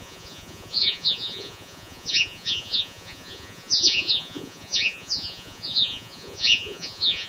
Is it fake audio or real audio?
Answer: fake